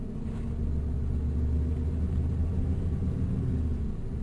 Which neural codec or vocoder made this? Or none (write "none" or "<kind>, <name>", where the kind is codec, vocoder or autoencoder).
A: none